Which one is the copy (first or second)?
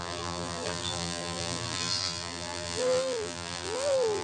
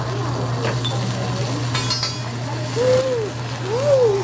first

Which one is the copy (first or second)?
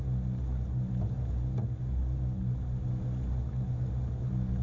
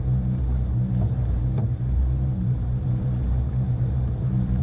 second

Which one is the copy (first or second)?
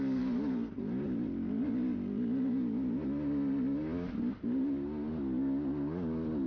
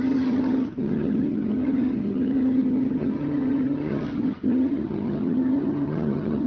second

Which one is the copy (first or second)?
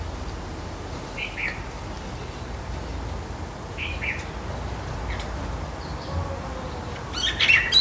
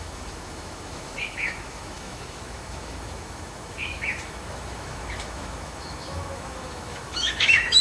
second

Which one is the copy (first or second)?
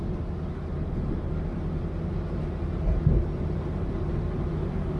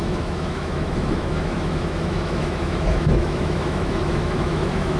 second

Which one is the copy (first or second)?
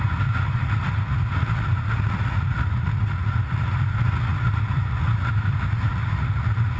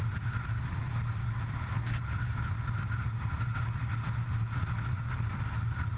first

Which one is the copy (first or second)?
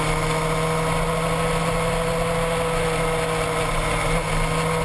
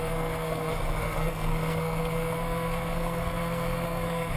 second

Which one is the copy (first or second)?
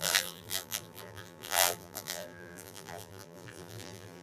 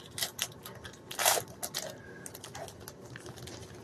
first